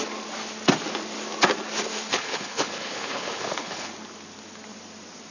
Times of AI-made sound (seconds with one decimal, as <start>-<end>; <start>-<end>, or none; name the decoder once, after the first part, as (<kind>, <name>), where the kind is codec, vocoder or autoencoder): 2.1-3.9 (codec, HILCodec)